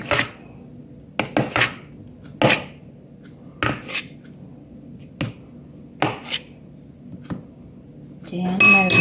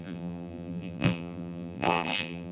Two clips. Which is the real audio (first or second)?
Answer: first